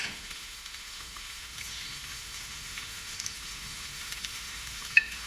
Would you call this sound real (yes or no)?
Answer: no